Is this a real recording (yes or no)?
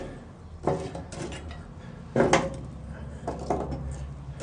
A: yes